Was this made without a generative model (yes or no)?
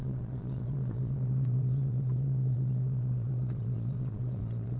no